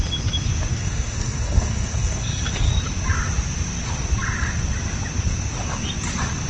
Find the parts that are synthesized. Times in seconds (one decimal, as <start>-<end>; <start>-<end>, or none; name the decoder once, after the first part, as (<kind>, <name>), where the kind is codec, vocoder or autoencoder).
0.7-2.7 (codec, SNAC)